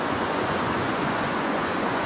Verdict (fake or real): fake